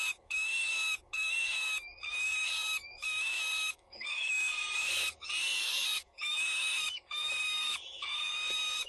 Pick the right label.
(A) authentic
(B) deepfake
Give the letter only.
B